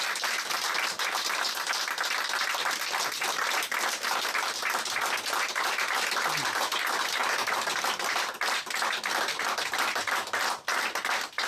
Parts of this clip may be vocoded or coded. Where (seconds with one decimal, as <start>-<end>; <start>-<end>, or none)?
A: none